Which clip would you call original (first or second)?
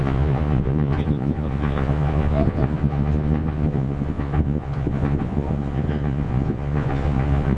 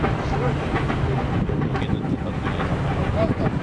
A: second